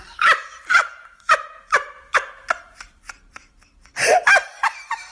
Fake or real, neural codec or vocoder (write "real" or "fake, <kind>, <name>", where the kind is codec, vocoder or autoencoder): real